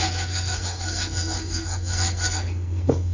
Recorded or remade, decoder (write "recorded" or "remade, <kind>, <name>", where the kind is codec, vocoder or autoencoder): remade, codec, SNAC